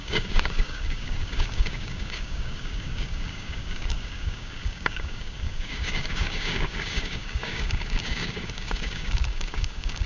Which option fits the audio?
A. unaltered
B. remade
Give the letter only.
B